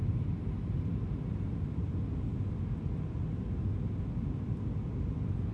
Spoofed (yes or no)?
no